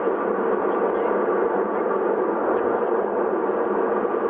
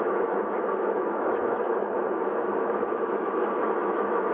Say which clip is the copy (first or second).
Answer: second